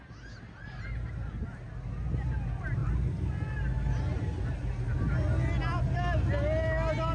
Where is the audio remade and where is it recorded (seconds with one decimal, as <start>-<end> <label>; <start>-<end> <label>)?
0.0-7.1 recorded